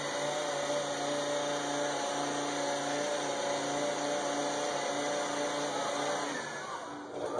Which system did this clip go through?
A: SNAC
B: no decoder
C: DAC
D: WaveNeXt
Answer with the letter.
B